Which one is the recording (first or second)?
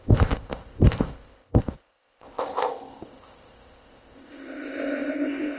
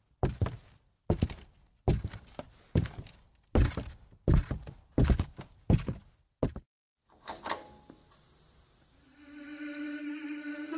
second